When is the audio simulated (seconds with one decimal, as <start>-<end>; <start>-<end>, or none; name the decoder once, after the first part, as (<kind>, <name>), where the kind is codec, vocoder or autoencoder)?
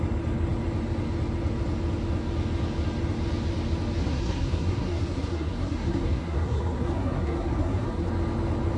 4.0-8.1 (codec, SNAC)